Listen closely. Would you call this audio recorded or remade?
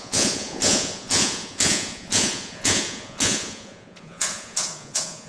remade